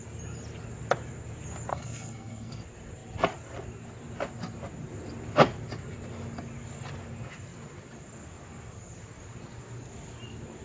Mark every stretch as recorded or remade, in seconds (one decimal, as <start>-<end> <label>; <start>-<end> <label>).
0.0-1.7 recorded; 1.7-2.6 remade; 2.6-10.6 recorded